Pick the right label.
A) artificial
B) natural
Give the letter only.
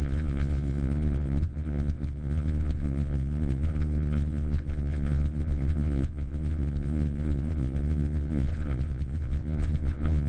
A